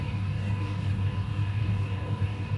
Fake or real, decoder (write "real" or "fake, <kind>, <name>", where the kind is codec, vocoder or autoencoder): fake, codec, DAC